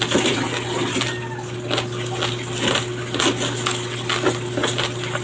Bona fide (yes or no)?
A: yes